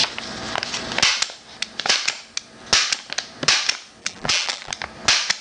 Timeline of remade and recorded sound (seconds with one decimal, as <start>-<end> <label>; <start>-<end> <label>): 0.0-4.0 recorded; 4.0-4.7 remade; 4.7-5.4 recorded